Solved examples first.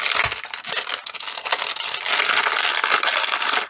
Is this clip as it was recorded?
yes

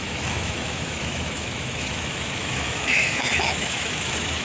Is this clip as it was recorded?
no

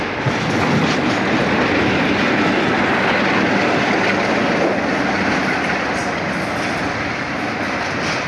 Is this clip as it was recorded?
yes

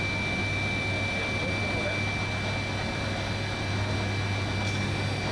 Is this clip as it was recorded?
yes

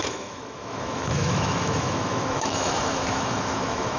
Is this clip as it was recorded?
no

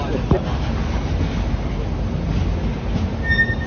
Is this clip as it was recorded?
yes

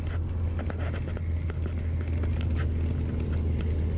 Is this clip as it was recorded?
yes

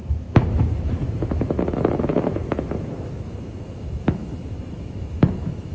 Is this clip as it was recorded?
no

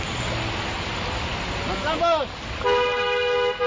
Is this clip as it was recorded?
yes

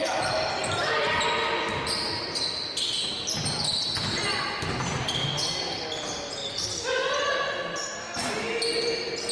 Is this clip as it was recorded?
yes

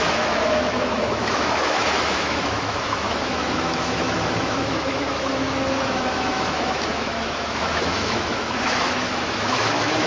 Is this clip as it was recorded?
no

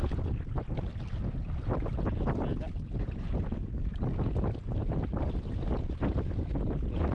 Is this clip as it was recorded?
yes